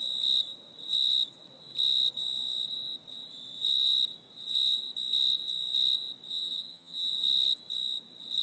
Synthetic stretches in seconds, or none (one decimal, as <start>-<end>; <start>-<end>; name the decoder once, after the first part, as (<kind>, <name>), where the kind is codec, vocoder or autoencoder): 6.3-7.1 (vocoder, HiFi-GAN)